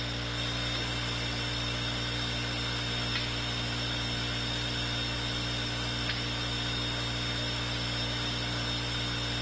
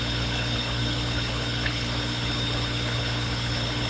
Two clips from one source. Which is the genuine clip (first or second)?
first